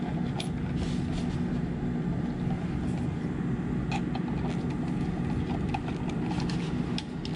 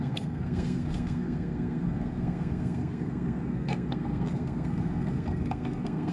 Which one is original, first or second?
first